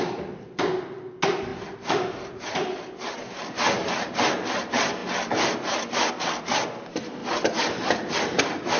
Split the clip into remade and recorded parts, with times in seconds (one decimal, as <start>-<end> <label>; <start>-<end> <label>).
0.0-8.8 recorded